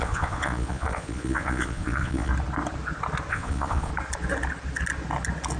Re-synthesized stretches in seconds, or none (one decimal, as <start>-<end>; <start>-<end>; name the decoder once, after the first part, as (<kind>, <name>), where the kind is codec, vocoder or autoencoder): 0.0-2.3 (vocoder, Vocos); 3.3-3.9